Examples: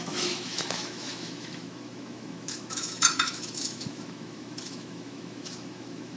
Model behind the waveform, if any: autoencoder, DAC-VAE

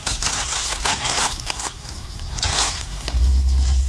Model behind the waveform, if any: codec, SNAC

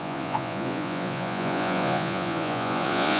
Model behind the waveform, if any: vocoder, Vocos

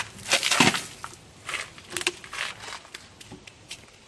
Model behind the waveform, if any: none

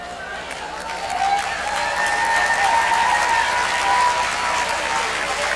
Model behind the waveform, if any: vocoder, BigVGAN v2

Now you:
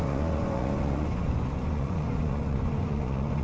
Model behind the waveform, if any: vocoder, Vocos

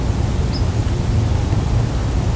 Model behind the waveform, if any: none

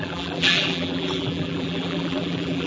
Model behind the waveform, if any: vocoder, BigVGAN v2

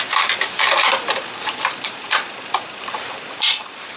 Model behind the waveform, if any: vocoder, BigVGAN v2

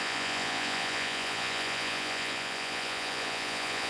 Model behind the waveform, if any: vocoder, Vocos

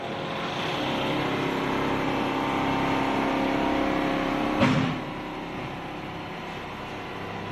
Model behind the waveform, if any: none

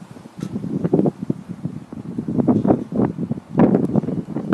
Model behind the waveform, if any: none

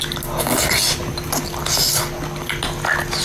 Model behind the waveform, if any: none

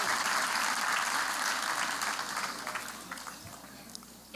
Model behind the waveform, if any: none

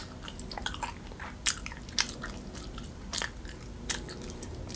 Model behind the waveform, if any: none